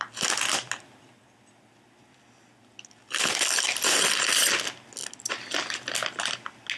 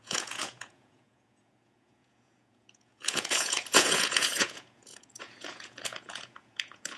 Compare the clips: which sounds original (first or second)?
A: first